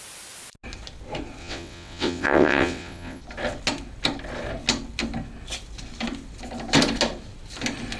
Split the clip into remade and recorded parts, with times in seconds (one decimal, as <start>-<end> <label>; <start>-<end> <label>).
0.0-1.4 recorded; 1.4-3.2 remade; 3.2-8.0 recorded